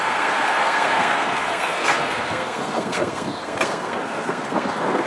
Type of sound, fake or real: fake